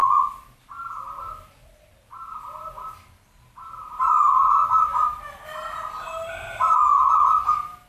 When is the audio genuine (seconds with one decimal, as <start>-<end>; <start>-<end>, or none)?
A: 0.6-7.9